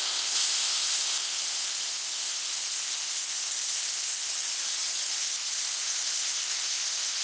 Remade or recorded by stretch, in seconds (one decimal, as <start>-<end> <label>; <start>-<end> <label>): 0.0-4.3 remade; 4.3-5.2 recorded; 5.2-7.2 remade